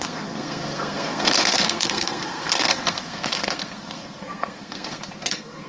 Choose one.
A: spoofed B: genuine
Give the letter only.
A